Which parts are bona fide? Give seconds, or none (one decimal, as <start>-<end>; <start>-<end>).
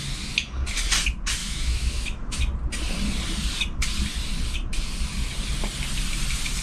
0.0-1.4; 2.4-6.6